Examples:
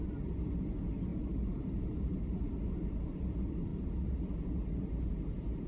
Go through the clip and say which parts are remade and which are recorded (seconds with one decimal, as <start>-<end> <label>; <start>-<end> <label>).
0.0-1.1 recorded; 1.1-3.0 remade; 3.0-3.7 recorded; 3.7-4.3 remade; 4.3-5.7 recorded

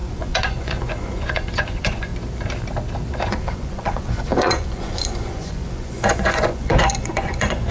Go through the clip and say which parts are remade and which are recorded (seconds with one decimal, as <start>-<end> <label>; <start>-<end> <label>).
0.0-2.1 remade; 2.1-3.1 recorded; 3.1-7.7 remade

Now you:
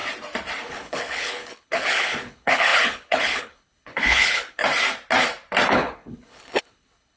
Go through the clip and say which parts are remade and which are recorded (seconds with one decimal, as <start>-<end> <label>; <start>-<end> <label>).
0.0-0.7 recorded; 0.7-4.6 remade; 4.6-5.7 recorded; 5.7-7.2 remade

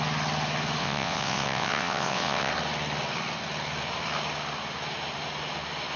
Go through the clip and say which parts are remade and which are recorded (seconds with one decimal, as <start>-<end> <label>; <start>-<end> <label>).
0.0-0.8 recorded; 0.8-2.5 remade; 2.5-6.0 recorded